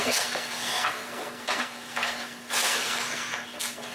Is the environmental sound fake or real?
fake